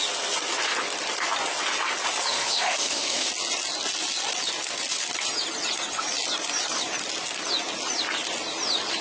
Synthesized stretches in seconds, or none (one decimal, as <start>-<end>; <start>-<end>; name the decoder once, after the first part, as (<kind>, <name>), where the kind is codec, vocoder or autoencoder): 2.3-3.3 (autoencoder, DAC-VAE)